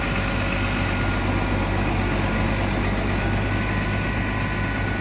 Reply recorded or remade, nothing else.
recorded